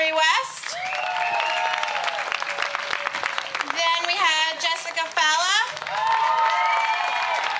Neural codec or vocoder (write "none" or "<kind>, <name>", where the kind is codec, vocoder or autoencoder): none